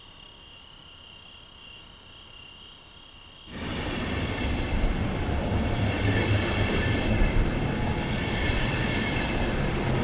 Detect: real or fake fake